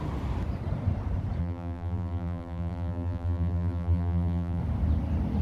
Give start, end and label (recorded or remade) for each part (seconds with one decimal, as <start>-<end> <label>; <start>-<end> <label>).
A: 0.0-1.4 recorded; 1.4-4.6 remade; 4.6-5.4 recorded